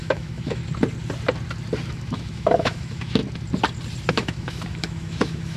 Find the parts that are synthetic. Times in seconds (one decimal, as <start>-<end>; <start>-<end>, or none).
0.0-0.6; 1.9-3.2; 4.1-5.6